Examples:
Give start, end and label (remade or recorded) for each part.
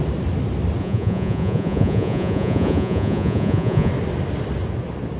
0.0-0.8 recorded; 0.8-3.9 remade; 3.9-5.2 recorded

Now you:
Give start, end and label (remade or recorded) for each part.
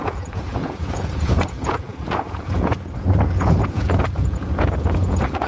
0.0-5.5 remade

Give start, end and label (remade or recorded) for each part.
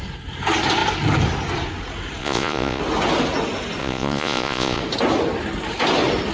0.0-2.2 recorded; 2.2-2.8 remade; 2.8-3.8 recorded; 3.8-4.8 remade; 4.8-6.3 recorded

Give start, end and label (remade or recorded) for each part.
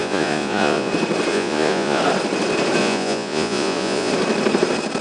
0.0-0.9 remade; 0.9-1.3 recorded; 1.3-2.0 remade; 2.0-2.8 recorded; 2.8-4.1 remade; 4.1-5.0 recorded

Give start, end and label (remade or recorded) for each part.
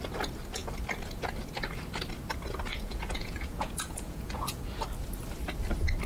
0.0-2.7 recorded; 2.7-4.6 remade; 4.6-6.1 recorded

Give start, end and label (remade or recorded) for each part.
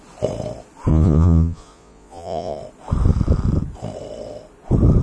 0.0-0.9 recorded; 0.9-2.6 remade; 2.6-5.0 recorded